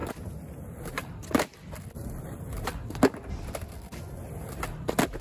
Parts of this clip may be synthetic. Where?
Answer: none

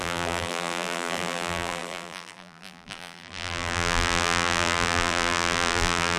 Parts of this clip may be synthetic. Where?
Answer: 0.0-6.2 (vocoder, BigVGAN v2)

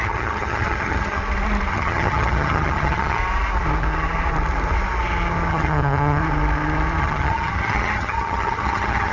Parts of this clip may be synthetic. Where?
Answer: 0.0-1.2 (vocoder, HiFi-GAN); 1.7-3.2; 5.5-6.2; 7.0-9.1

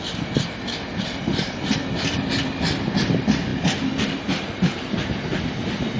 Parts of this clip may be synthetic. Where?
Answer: none